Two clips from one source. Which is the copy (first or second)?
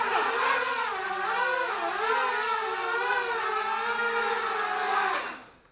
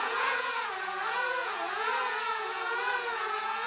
second